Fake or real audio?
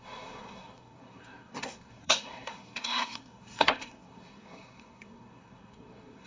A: fake